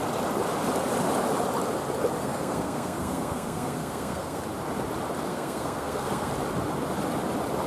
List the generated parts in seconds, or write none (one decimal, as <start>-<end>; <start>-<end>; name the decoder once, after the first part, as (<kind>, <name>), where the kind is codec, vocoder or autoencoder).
2.2-4.4 (codec, SNAC); 5.3-6.3